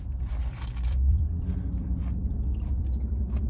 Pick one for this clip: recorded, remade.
remade